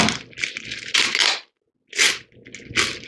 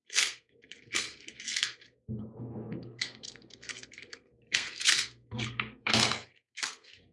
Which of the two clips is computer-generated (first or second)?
second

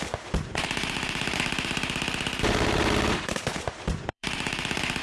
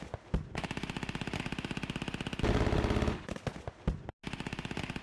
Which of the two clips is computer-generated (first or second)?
first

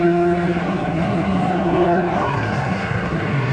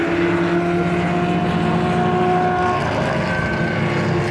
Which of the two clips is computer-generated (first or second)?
first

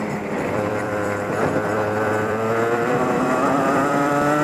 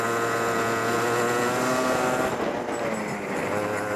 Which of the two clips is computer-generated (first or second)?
first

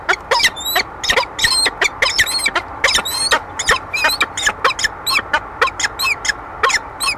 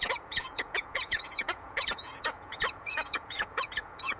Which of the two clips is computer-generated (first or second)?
second